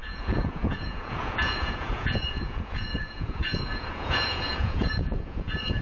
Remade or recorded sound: remade